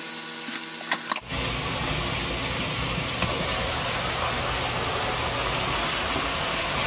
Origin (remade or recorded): recorded